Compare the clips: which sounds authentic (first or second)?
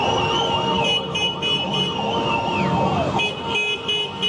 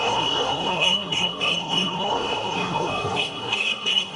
first